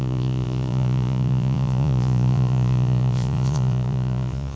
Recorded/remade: remade